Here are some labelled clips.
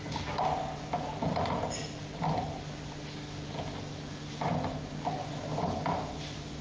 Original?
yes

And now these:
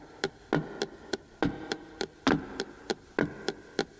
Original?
yes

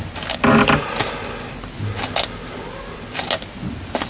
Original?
yes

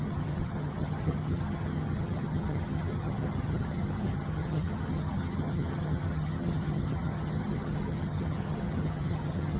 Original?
no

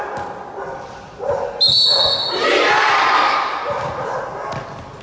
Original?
yes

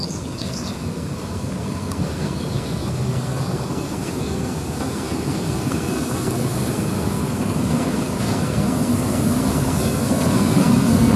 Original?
no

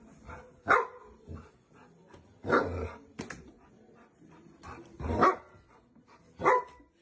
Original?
yes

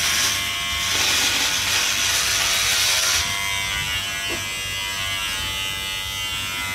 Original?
yes